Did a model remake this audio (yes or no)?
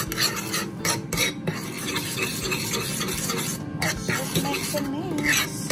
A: no